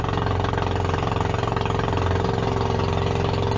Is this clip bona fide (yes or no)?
yes